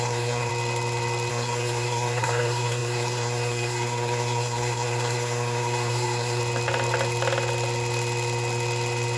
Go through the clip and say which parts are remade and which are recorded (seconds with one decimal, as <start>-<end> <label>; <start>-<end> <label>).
0.0-0.5 remade; 0.5-1.3 recorded; 1.3-6.4 remade; 6.4-9.2 recorded